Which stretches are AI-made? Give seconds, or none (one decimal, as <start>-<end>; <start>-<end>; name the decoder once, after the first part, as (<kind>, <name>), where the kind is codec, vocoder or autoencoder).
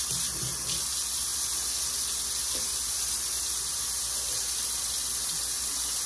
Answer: none